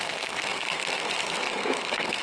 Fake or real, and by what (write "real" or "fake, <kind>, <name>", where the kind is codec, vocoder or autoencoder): fake, codec, SNAC